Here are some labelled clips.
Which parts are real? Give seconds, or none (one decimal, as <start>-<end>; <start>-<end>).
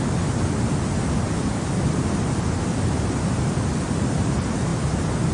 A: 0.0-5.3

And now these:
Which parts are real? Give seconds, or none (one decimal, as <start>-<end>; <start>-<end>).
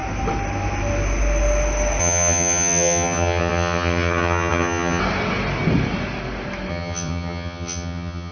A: 0.0-2.0; 5.0-6.7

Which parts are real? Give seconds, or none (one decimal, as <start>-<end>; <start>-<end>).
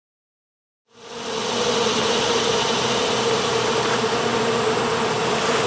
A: 0.4-2.5; 4.3-5.3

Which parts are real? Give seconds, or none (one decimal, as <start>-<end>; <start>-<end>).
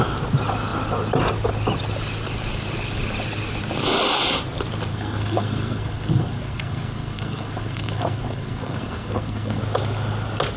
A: 0.0-4.9; 9.6-10.6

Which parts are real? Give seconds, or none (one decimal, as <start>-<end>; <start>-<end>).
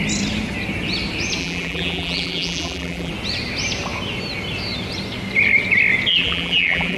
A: 0.0-1.4; 3.1-6.1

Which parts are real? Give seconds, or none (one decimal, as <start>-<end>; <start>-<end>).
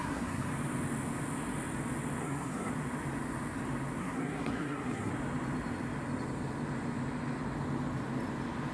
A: 0.5-2.2; 2.7-4.0; 5.1-8.7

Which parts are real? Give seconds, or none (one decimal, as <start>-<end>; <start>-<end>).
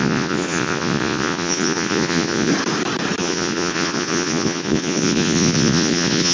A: 2.5-3.2